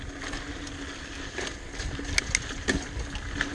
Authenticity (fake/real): real